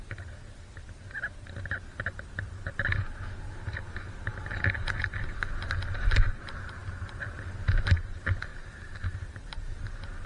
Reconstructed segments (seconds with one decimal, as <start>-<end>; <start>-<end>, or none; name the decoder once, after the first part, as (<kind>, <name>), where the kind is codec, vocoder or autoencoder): none